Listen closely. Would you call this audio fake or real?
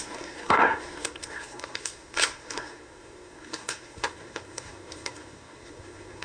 fake